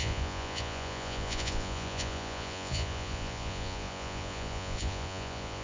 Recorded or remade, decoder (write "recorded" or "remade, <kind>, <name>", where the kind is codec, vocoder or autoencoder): remade, vocoder, Vocos